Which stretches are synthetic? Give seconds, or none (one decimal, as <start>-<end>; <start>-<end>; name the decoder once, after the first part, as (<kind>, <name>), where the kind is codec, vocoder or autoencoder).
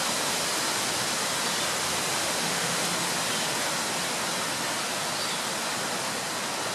2.2-2.8 (autoencoder, DAC-VAE)